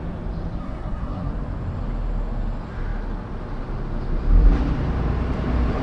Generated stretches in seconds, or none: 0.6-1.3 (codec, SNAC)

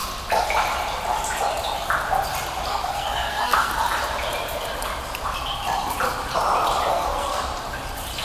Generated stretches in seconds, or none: 2.7-3.7 (codec, SNAC); 6.9-7.4

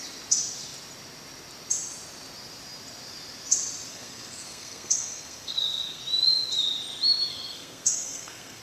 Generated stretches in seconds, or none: 3.9-6.0 (codec, SNAC); 7.3-8.6

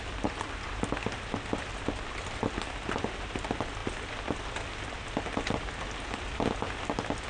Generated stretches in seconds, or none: none

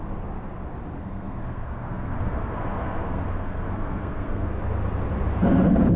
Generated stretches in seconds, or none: 1.0-4.6 (codec, SNAC)